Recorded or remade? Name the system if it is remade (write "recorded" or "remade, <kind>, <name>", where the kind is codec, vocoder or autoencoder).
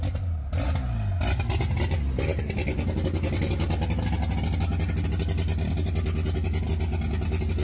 recorded